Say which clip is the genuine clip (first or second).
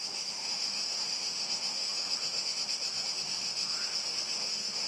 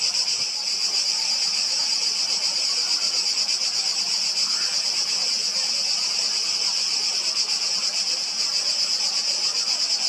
second